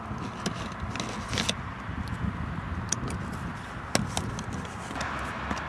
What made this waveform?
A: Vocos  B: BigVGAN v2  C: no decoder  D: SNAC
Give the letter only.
C